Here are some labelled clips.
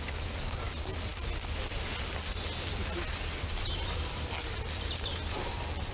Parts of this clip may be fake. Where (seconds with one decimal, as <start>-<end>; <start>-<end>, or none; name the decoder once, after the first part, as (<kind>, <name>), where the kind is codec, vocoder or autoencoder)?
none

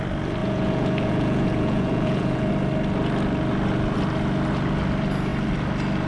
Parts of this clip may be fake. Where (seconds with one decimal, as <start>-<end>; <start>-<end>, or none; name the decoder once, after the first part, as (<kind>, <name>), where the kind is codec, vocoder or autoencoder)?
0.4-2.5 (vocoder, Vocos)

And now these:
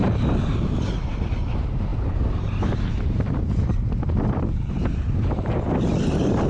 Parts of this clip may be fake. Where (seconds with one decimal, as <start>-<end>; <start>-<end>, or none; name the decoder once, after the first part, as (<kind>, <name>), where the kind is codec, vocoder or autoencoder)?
1.9-5.7 (vocoder, BigVGAN v2)